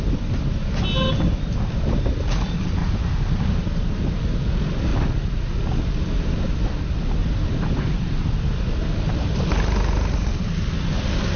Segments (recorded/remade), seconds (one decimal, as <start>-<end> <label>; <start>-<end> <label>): 0.0-2.8 recorded; 2.8-4.2 remade; 4.2-7.2 recorded; 7.2-8.0 remade; 8.0-11.4 recorded